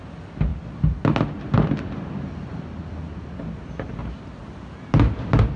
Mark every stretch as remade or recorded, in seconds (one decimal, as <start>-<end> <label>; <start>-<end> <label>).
0.0-5.6 recorded